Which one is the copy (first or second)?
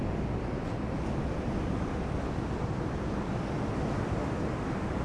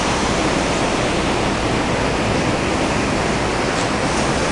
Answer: first